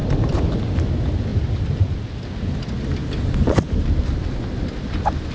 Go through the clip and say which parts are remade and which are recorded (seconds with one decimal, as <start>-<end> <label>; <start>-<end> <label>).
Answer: 0.0-1.3 recorded; 1.3-2.0 remade; 2.0-3.0 recorded; 3.0-4.0 remade; 4.0-5.3 recorded